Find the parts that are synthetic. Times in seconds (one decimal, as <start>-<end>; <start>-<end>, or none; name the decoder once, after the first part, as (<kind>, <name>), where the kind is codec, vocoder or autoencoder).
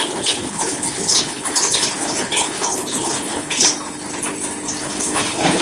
0.0-3.7 (codec, HILCodec); 4.8-5.6